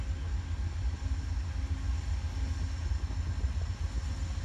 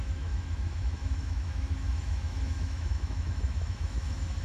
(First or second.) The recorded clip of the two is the first